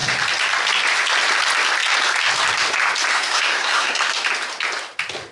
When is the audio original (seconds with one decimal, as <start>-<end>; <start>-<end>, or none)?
0.0-3.1; 4.0-5.3

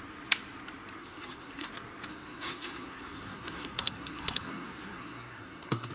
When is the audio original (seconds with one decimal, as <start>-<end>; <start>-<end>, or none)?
0.0-1.0; 1.7-2.1

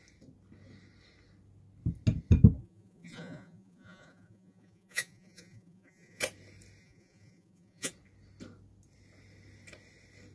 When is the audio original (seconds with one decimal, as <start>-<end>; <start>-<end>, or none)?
0.0-2.6; 6.2-6.8; 7.9-10.3

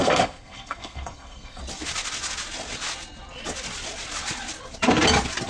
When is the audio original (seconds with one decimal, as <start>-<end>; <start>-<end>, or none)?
1.6-5.5

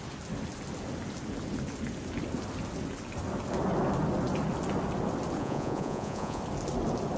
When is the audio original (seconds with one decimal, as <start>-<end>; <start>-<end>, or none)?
0.0-5.4; 6.4-7.2